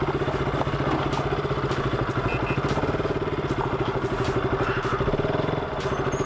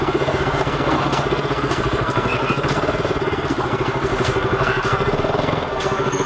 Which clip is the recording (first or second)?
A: first